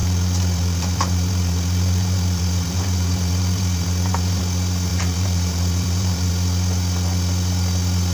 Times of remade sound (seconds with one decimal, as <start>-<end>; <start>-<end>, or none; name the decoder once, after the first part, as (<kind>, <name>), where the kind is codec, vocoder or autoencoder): 0.0-4.4 (vocoder, BigVGAN v2); 4.9-6.3

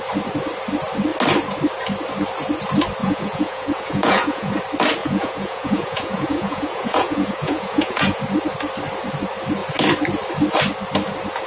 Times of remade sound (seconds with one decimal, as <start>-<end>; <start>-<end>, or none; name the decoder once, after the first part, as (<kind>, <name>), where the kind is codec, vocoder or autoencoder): 3.0-4.5 (vocoder, Vocos); 5.0-8.2

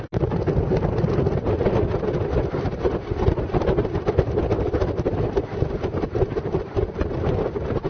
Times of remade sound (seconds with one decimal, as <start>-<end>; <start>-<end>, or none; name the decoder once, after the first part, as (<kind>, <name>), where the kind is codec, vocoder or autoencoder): none